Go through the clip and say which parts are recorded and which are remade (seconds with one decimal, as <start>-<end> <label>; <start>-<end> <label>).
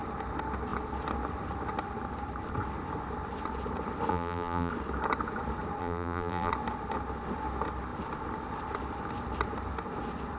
0.0-4.1 recorded; 4.1-4.7 remade; 4.7-5.8 recorded; 5.8-6.5 remade; 6.5-10.4 recorded